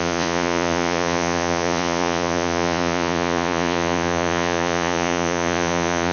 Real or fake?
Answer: fake